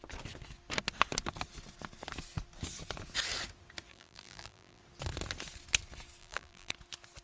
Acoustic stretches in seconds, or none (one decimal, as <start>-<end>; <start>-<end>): 0.0-3.9; 4.8-6.2; 6.7-7.2